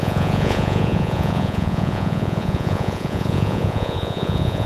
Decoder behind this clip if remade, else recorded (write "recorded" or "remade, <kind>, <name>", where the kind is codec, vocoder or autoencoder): remade, vocoder, Vocos